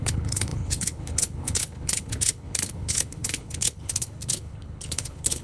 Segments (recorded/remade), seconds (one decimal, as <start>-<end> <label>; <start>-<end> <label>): 0.0-5.4 remade

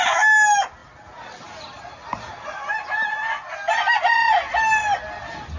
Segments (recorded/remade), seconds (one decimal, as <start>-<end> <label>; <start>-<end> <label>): 0.0-5.6 recorded

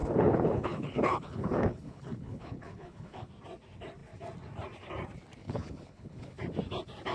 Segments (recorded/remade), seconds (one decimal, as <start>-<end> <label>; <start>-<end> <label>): 0.0-3.3 remade; 3.3-5.4 recorded; 5.4-6.4 remade; 6.4-7.1 recorded

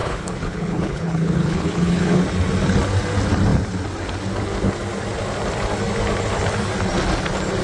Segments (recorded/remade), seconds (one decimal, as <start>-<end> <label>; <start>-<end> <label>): 0.0-2.2 remade; 2.2-7.6 recorded

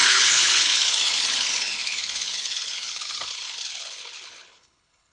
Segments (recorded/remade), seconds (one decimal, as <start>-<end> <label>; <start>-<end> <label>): 0.0-5.1 remade

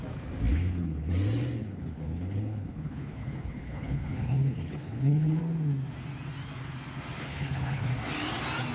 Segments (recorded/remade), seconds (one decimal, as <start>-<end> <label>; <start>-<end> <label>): 0.0-0.5 recorded; 0.5-1.1 remade; 1.1-1.6 recorded; 1.6-5.4 remade; 5.4-7.2 recorded; 7.2-7.9 remade; 7.9-8.7 recorded